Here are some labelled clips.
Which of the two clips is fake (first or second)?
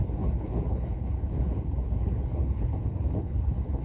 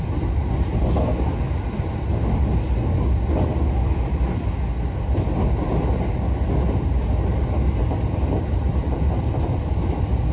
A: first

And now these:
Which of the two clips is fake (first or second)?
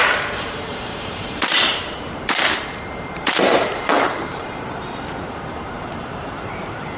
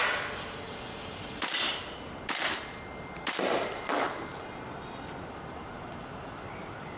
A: first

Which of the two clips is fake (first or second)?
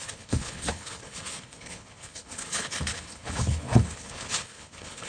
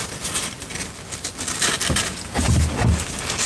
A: first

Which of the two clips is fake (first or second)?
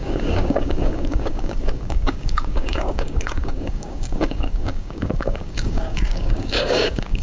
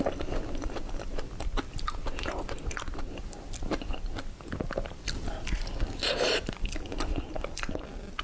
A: first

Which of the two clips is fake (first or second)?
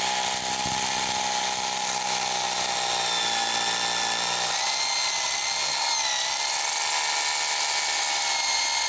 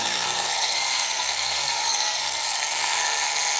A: second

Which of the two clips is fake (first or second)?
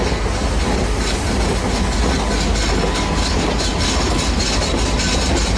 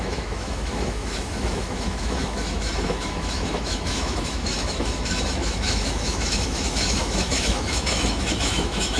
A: second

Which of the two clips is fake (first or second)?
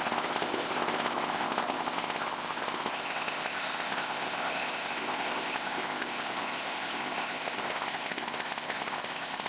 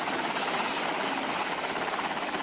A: first